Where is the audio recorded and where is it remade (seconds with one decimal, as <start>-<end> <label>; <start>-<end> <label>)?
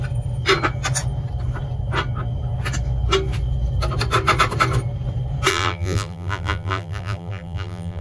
0.0-5.5 recorded; 5.5-8.0 remade